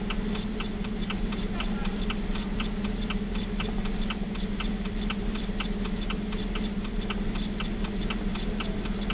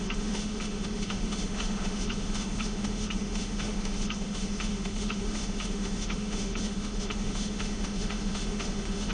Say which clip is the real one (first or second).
first